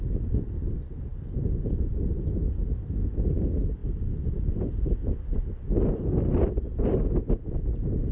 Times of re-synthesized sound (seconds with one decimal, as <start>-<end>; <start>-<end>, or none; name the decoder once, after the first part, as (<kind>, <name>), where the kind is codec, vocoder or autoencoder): none

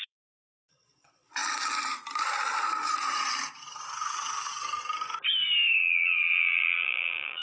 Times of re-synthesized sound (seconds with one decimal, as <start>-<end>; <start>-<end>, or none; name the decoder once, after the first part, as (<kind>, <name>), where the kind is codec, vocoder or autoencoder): 0.0-1.4 (vocoder, Vocos); 5.8-7.4

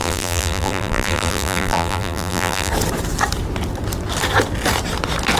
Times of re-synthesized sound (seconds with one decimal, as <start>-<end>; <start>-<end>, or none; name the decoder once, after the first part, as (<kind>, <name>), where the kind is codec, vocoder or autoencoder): 0.0-2.7 (vocoder, BigVGAN v2)